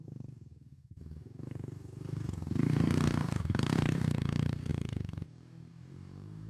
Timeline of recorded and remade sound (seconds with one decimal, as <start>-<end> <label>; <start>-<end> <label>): 0.0-6.5 remade